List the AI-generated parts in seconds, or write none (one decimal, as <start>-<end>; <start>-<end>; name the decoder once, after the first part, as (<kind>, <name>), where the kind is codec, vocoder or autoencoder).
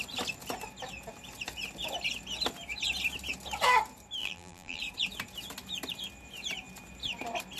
4.2-4.8 (vocoder, BigVGAN v2)